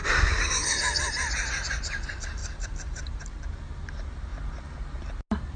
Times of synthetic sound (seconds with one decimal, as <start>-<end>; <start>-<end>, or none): 0.0-0.5; 2.4-3.5